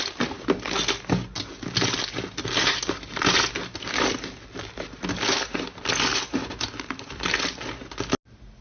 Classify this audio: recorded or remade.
recorded